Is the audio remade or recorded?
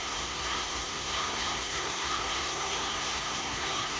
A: remade